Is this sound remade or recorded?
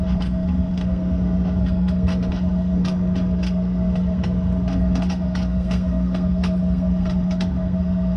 remade